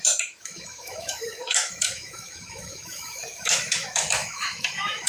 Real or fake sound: fake